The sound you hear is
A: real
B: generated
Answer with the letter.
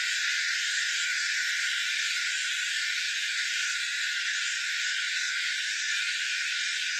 B